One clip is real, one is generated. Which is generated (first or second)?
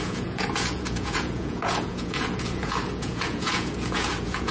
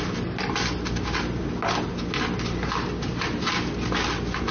first